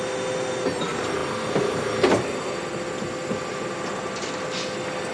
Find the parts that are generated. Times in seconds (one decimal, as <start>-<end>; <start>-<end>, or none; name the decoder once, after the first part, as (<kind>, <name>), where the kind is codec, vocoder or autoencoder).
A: none

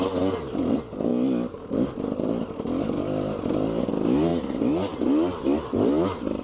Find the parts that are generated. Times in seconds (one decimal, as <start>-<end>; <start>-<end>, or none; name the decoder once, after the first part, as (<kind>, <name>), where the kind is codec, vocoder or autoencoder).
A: none

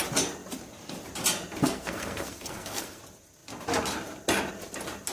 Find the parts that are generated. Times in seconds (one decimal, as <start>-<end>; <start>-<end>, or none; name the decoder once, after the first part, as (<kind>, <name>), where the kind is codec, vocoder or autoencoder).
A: 1.6-3.0 (codec, SNAC)